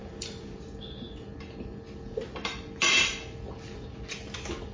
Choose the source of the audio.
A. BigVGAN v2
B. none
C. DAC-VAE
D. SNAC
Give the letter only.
B